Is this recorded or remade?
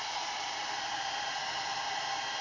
recorded